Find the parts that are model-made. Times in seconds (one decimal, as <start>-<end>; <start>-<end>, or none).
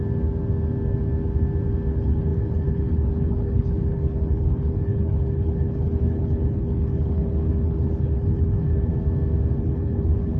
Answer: 1.9-8.9; 9.6-10.4